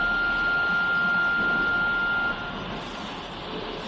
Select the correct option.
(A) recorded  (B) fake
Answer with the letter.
A